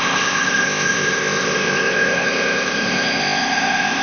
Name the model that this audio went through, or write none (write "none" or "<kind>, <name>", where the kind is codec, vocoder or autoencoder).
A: codec, ZipCodec